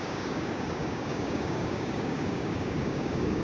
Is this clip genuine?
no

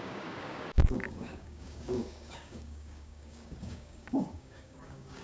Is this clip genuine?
no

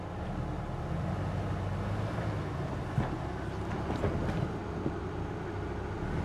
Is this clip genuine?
yes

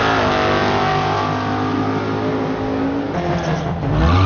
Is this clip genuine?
yes